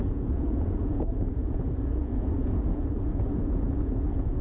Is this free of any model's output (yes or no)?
no